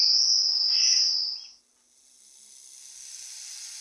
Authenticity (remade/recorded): recorded